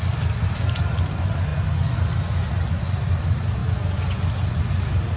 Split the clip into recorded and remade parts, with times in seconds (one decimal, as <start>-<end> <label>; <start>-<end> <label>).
0.0-5.2 recorded